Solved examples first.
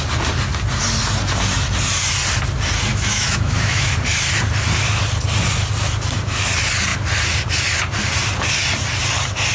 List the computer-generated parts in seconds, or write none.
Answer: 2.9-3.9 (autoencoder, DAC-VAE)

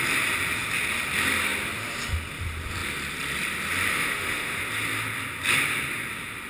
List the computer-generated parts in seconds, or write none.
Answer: 3.9-4.6 (autoencoder, DAC-VAE)